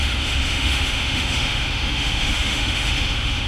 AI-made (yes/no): yes